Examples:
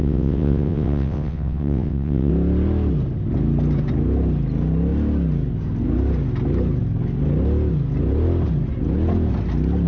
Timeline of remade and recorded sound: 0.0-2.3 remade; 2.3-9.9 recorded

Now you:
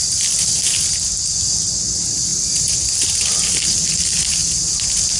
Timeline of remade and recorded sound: 0.0-5.2 recorded

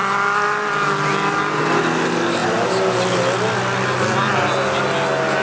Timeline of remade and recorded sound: 0.0-5.4 recorded

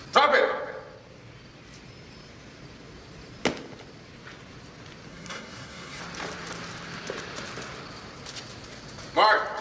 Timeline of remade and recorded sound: 0.0-5.1 recorded; 5.1-6.0 remade; 6.0-9.6 recorded

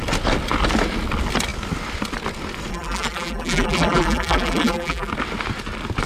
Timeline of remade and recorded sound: 0.0-2.7 recorded; 2.7-5.1 remade; 5.1-6.1 recorded

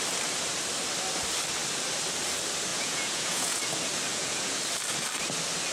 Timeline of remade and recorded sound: 0.0-2.7 recorded; 2.7-3.6 remade; 3.6-4.1 recorded; 4.1-4.6 remade; 4.6-5.7 recorded

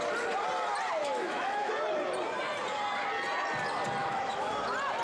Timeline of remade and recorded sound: 0.0-1.0 recorded; 1.0-1.7 remade; 1.7-4.0 recorded; 4.0-4.5 remade; 4.5-5.0 recorded